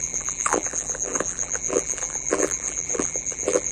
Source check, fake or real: fake